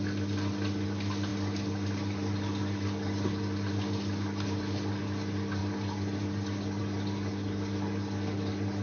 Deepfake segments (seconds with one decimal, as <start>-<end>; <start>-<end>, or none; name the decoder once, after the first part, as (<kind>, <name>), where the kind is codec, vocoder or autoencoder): none